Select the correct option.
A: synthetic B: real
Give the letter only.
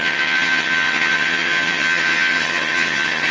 A